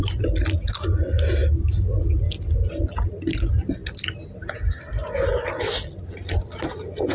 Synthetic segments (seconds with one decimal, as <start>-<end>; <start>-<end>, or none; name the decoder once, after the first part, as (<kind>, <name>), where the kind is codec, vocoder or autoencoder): none